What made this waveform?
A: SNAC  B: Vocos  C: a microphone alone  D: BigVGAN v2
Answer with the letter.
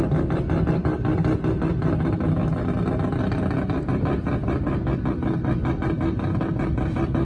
C